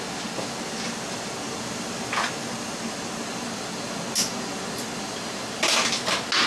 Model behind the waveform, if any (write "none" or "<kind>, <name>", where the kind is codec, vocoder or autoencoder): none